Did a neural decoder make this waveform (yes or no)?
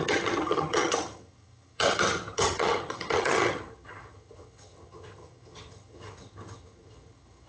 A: yes